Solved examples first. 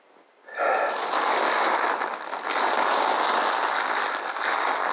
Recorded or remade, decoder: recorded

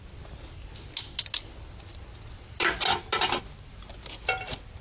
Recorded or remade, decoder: recorded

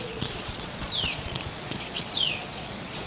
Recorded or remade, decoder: remade, vocoder, Vocos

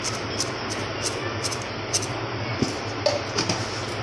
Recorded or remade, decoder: recorded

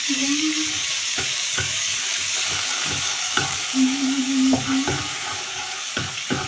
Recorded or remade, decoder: remade, codec, DAC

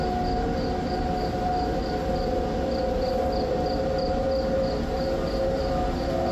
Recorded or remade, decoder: recorded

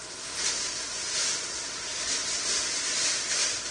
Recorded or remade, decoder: recorded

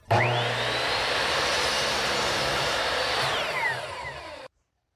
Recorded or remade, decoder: remade, vocoder, BigVGAN v2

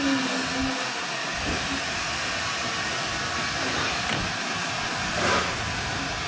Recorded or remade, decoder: recorded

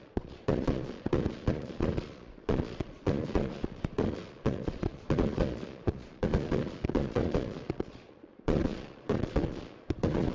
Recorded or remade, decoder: remade, vocoder, Vocos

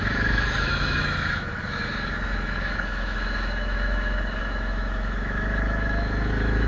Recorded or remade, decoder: remade, autoencoder, DAC-VAE